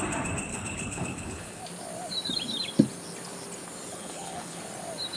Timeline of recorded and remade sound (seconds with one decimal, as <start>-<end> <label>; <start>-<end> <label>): 0.0-0.5 recorded; 0.5-1.6 remade; 1.6-3.9 recorded; 3.9-4.6 remade; 4.6-5.2 recorded